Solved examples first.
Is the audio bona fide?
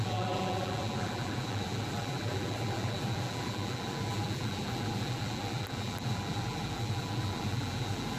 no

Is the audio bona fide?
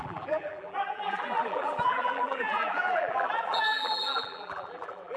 no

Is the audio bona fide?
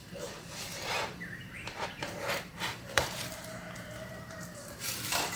no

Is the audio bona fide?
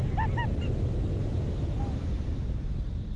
yes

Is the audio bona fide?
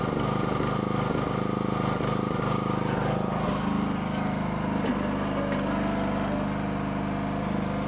yes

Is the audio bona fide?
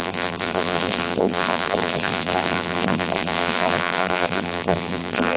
no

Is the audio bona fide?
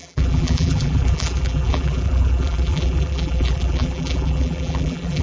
no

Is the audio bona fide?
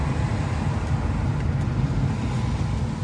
yes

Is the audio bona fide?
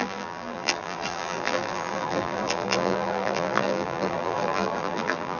no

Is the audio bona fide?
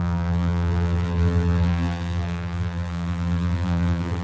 no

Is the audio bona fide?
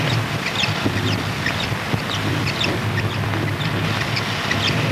no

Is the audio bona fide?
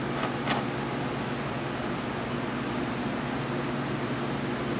yes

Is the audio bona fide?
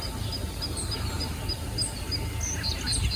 yes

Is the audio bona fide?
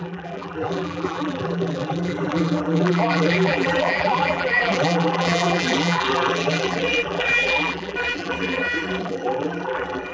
no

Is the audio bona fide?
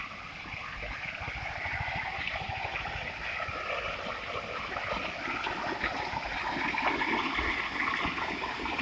yes